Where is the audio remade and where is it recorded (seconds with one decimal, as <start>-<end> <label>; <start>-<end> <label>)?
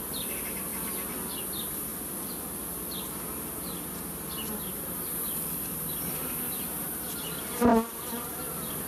0.0-8.9 recorded